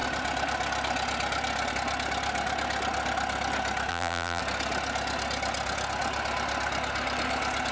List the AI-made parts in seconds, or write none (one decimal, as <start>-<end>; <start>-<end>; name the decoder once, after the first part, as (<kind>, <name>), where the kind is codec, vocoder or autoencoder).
3.9-4.4 (vocoder, BigVGAN v2)